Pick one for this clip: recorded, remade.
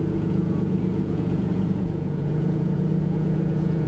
remade